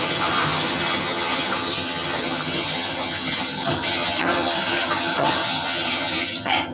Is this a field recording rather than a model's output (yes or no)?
no